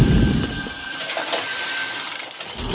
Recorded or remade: recorded